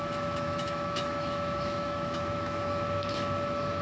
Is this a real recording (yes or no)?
no